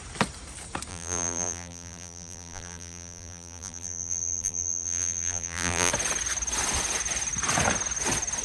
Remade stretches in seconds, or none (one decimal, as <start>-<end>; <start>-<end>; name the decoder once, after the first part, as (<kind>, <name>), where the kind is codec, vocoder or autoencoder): 0.9-5.9 (vocoder, BigVGAN v2)

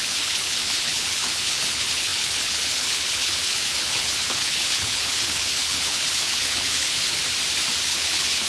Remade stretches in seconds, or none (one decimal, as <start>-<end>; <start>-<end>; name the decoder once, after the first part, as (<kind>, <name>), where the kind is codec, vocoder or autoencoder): 0.0-7.2 (codec, HILCodec); 7.8-8.5

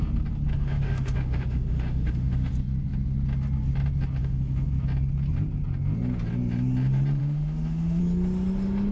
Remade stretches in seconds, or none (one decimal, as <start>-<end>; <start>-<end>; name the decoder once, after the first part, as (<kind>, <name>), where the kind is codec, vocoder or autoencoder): 0.5-2.5 (autoencoder, DAC-VAE); 4.2-4.7; 7.2-8.0

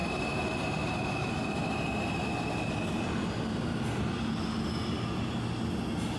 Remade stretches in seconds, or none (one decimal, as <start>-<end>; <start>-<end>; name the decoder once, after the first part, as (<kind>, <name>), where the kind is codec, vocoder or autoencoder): none

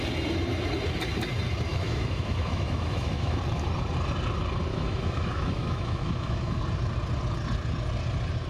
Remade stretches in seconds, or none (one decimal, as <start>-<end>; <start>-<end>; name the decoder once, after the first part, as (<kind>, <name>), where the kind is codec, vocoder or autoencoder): 1.7-3.4 (autoencoder, DAC-VAE); 4.7-6.6

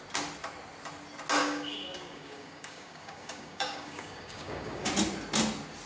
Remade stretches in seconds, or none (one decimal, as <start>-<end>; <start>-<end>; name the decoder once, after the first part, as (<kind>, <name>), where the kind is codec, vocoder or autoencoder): 1.4-4.9 (codec, DAC)